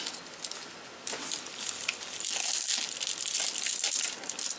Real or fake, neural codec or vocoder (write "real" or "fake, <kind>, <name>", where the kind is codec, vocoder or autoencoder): real